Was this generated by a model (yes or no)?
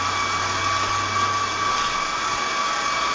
no